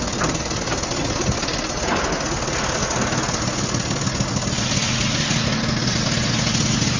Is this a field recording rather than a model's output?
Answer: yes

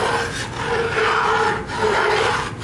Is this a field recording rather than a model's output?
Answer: yes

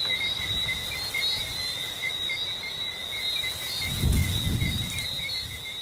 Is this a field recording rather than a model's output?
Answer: yes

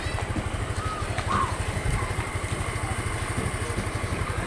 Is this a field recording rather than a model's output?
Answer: yes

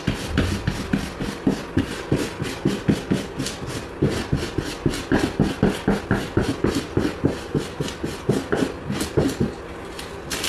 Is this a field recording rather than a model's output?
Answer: yes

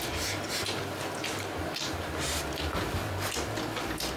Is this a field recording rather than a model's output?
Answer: yes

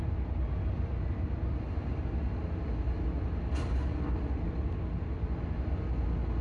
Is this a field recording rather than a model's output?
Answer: yes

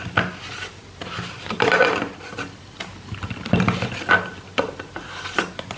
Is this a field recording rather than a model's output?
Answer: yes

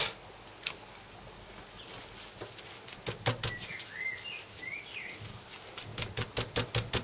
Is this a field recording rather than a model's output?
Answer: yes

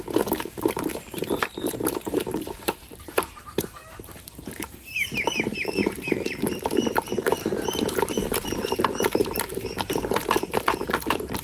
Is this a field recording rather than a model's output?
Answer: no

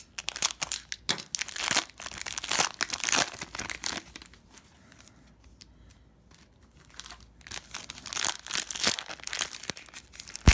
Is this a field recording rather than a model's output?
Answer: yes